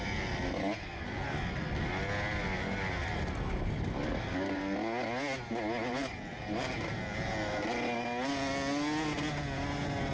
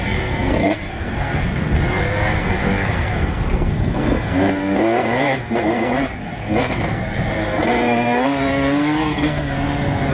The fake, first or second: second